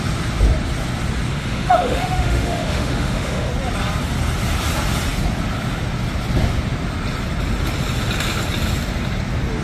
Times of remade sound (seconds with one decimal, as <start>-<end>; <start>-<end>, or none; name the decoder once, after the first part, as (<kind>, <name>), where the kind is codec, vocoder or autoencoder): 1.3-3.5 (autoencoder, DAC-VAE)